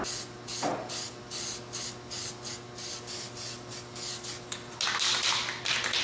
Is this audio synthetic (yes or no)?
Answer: no